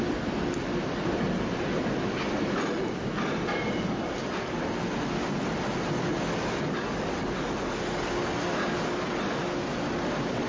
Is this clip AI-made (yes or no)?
no